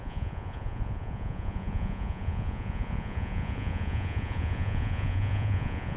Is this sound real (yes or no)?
no